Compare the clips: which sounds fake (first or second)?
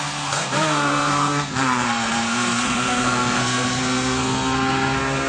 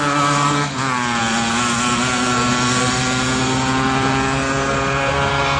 first